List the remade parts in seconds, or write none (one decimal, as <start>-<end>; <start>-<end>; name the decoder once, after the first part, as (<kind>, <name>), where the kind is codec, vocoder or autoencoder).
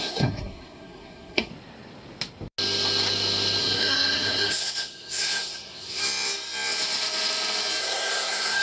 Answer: 0.0-1.5 (codec, SNAC); 3.6-6.0; 7.8-8.6